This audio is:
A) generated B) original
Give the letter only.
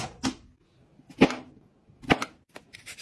B